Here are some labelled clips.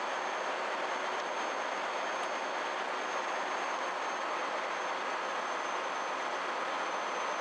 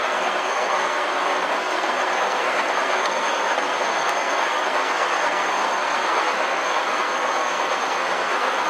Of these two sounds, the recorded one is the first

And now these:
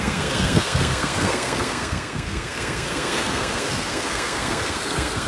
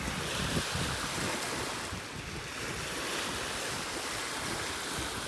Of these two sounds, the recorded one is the second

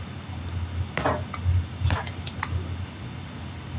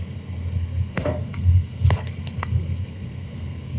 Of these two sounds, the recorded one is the first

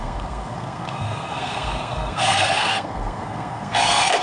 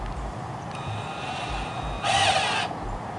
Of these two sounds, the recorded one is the second